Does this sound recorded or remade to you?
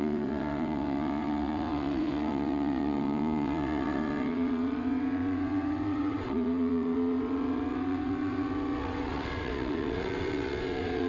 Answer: remade